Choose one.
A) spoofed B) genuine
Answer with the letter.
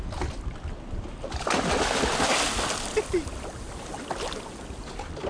B